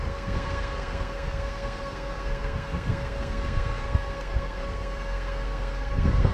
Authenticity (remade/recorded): remade